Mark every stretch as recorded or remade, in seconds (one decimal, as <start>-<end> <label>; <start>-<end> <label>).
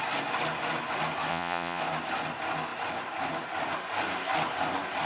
0.0-1.3 recorded; 1.3-1.8 remade; 1.8-5.1 recorded